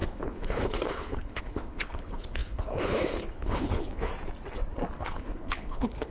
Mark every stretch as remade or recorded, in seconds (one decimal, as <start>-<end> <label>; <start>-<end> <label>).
0.0-4.1 remade; 4.1-5.0 recorded; 5.0-6.1 remade